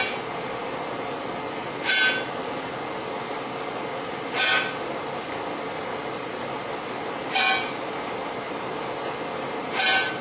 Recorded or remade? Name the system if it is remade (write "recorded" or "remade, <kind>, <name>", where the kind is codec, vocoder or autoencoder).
recorded